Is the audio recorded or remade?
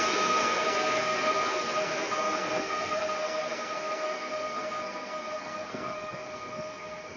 remade